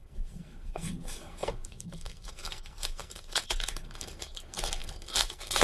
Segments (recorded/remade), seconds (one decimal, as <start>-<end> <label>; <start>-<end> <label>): 0.0-5.6 remade